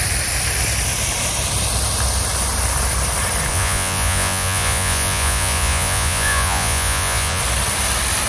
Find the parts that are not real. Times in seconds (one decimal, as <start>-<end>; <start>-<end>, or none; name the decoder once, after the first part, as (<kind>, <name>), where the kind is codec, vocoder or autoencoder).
3.5-7.4 (vocoder, Vocos)